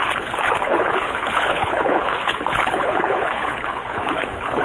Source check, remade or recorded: remade